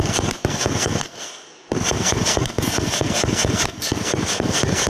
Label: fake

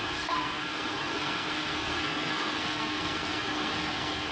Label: fake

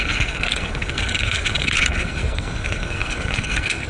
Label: fake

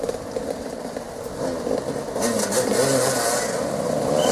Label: real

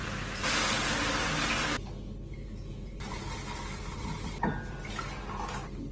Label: real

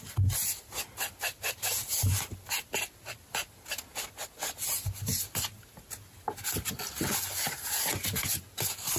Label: real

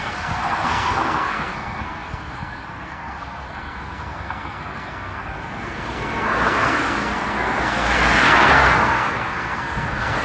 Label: fake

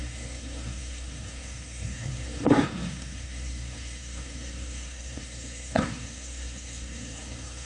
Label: fake